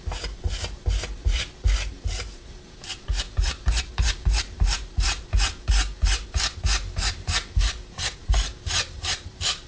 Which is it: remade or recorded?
remade